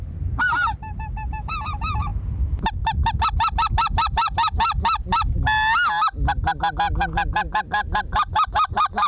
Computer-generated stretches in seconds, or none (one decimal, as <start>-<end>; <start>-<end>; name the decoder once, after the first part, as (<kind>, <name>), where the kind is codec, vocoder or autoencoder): 0.0-2.1 (vocoder, BigVGAN v2); 7.1-9.1